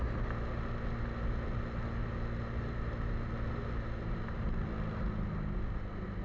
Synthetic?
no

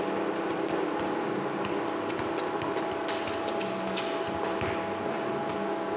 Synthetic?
no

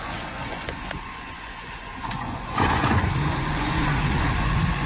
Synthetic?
yes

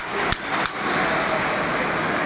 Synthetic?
no